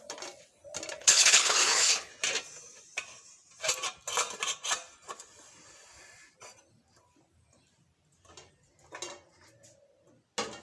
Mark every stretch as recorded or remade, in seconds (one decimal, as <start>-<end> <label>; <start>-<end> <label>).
0.0-1.0 recorded; 1.0-2.1 remade; 2.1-10.6 recorded